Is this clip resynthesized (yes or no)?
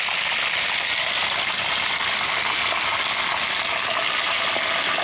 no